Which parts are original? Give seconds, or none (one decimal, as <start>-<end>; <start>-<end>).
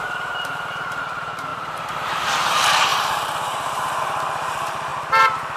4.9-5.6